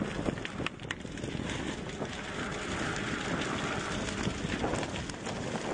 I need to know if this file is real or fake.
real